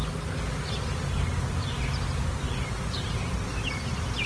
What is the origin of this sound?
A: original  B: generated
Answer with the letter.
A